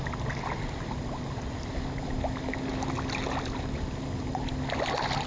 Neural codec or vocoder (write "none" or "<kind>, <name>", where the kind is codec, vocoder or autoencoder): none